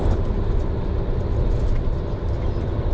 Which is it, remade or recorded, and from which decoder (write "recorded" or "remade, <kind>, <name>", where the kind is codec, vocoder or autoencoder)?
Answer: recorded